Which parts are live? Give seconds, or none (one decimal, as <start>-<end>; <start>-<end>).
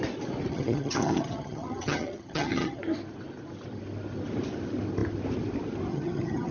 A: 0.0-0.5; 2.8-5.9